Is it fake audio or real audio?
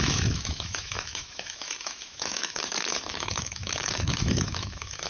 fake